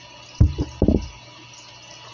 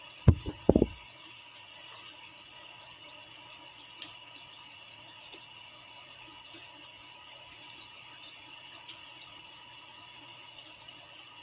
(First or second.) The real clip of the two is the first